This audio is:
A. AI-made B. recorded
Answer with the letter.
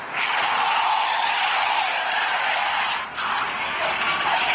B